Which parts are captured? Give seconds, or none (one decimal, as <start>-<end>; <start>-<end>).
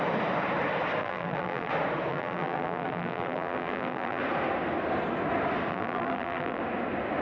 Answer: 0.0-1.0; 1.7-2.1; 4.2-5.7; 6.6-7.2